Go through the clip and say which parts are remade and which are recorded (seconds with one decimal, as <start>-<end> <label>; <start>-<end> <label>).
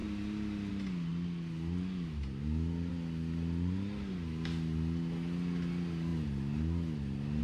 0.0-7.4 recorded